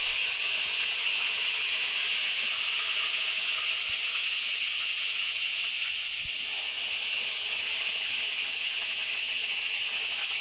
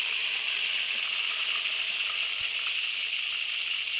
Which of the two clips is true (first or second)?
second